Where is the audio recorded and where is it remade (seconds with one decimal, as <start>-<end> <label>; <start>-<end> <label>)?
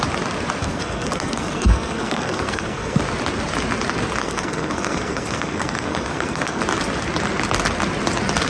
0.0-0.6 recorded; 0.6-3.0 remade; 3.0-4.2 recorded; 4.2-6.6 remade; 6.6-8.5 recorded